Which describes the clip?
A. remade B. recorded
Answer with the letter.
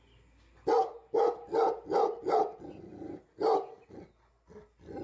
B